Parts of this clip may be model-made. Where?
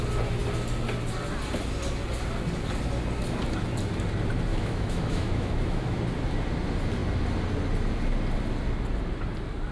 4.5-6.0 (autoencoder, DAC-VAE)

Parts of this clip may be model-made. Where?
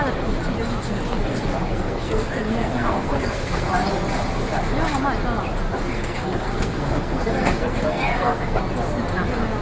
0.8-3.7 (codec, SNAC); 5.9-8.6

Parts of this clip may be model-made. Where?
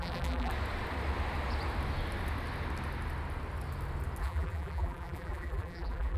0.0-0.5 (vocoder, BigVGAN v2); 4.2-6.2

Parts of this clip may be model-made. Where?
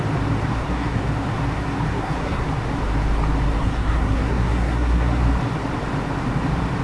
0.5-1.0 (codec, SNAC); 1.9-2.4; 3.6-5.2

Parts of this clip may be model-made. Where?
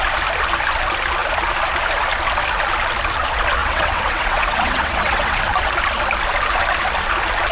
3.6-5.4 (vocoder, WaveNeXt)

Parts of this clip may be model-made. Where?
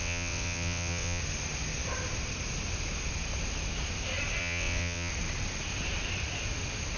0.0-1.2 (vocoder, WaveNeXt); 4.4-5.1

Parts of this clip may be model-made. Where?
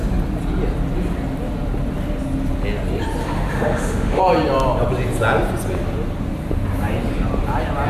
3.2-4.2 (autoencoder, DAC-VAE)